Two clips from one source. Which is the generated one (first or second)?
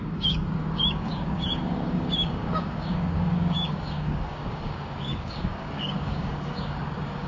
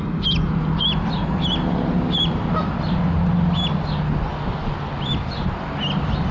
first